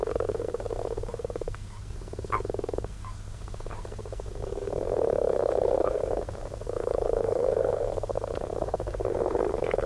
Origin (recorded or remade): remade